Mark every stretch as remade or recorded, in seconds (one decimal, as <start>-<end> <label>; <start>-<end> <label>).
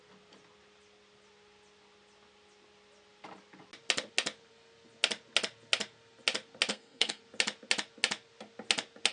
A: 0.0-6.7 recorded; 6.7-7.2 remade; 7.2-9.1 recorded